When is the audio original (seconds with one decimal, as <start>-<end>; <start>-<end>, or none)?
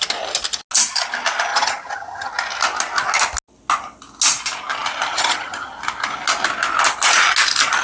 0.0-1.5; 2.3-5.1; 5.7-7.8